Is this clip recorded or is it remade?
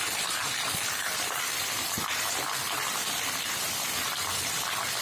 remade